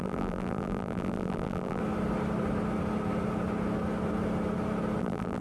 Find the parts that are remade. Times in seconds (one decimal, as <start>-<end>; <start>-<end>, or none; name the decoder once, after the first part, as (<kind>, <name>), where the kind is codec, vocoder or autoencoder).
0.0-1.8 (vocoder, BigVGAN v2); 5.0-5.4